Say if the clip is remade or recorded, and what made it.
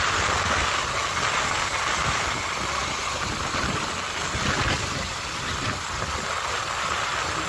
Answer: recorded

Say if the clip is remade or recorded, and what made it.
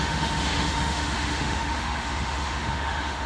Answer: remade, autoencoder, DAC-VAE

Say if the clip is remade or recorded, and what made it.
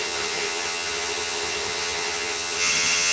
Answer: remade, vocoder, HiFi-GAN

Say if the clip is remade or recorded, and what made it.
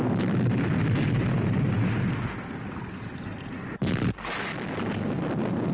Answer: recorded